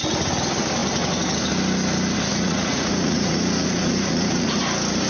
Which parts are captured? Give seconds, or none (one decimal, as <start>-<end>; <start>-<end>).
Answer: 0.0-2.3; 4.6-5.1